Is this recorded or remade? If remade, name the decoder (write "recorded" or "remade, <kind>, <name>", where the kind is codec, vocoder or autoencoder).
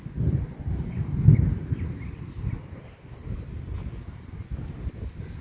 recorded